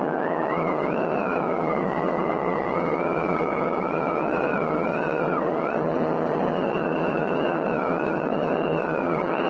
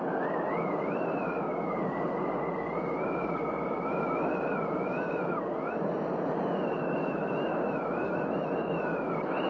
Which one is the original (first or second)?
second